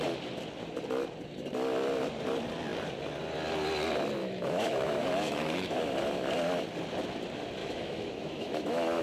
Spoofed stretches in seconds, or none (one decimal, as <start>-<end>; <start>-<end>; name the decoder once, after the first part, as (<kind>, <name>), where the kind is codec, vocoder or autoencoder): 4.2-5.8 (autoencoder, DAC-VAE); 7.6-9.0